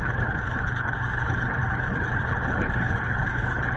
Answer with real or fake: fake